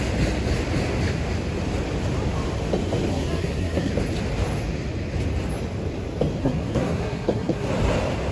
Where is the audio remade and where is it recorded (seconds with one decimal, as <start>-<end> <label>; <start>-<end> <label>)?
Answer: 0.0-3.1 recorded; 3.1-3.9 remade; 3.9-6.4 recorded; 6.4-7.7 remade; 7.7-8.3 recorded